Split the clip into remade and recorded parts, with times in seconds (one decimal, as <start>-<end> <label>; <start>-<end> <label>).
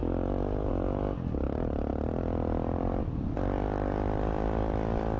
0.0-5.2 recorded